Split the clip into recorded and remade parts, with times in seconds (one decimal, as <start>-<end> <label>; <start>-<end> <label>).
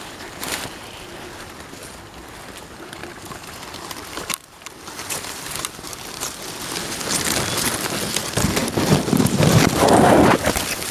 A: 0.0-3.0 recorded; 3.0-6.3 remade; 6.3-8.6 recorded; 8.6-9.2 remade; 9.2-10.9 recorded